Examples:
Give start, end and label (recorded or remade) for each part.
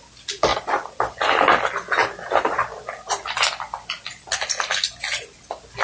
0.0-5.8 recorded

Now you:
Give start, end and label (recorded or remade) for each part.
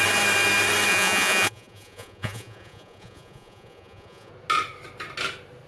0.0-0.9 recorded; 0.9-4.3 remade; 4.3-5.7 recorded